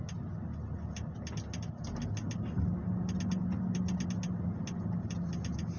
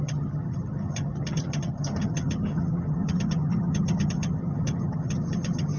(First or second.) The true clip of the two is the first